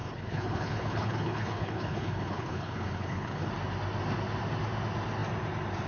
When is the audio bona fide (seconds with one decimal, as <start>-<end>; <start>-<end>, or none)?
3.5-5.9